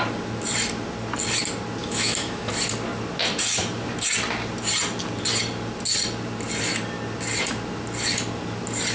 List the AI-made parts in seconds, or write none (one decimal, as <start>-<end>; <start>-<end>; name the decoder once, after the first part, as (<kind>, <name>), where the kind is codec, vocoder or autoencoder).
1.8-2.5 (autoencoder, DAC-VAE)